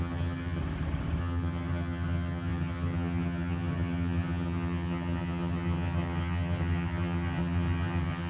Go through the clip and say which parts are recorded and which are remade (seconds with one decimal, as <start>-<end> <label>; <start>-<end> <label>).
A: 0.0-0.6 remade; 0.6-1.2 recorded; 1.2-8.3 remade